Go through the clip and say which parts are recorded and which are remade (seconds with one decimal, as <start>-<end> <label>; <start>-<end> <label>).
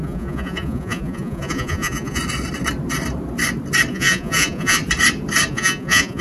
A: 0.0-2.2 remade; 2.2-3.9 recorded; 3.9-4.8 remade; 4.8-5.5 recorded; 5.5-6.2 remade